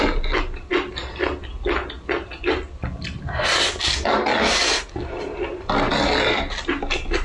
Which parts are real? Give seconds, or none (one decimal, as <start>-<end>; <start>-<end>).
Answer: 0.0-7.2